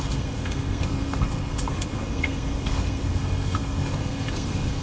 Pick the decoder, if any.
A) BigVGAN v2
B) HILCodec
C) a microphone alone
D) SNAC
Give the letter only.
D